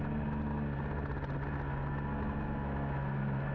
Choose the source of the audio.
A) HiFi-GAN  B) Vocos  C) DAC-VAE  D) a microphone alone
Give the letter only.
D